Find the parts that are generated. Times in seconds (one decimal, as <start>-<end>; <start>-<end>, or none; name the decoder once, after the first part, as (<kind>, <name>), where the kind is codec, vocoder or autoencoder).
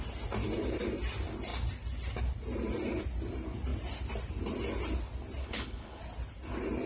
5.4-6.0 (codec, HILCodec)